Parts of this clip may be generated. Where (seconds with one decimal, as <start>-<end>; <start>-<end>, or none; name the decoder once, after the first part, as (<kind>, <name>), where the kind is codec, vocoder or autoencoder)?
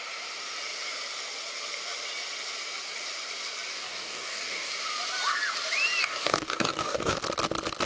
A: 3.7-4.7 (codec, DAC); 6.0-7.2